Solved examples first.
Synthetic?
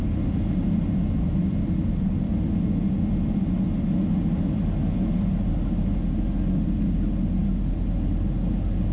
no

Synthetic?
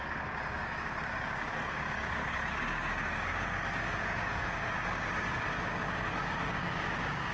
yes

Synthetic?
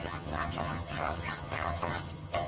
yes